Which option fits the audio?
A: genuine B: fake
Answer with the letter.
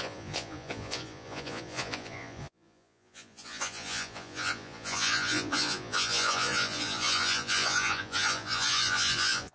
B